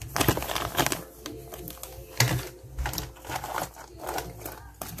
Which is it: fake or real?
real